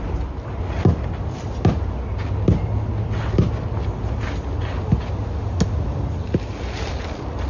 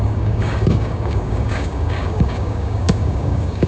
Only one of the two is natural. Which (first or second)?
first